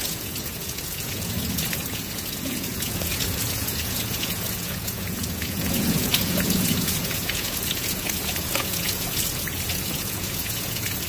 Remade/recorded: remade